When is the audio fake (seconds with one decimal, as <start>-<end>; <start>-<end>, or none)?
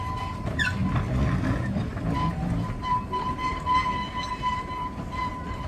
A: none